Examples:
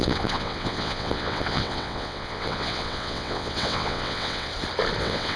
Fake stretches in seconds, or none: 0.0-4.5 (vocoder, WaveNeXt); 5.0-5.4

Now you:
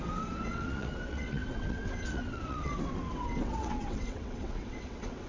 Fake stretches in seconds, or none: 0.0-5.3 (vocoder, WaveNeXt)